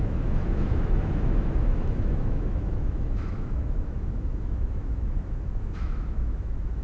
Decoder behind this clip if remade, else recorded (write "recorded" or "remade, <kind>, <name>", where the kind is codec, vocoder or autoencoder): remade, autoencoder, DAC-VAE